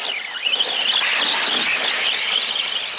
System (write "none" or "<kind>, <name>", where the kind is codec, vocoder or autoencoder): none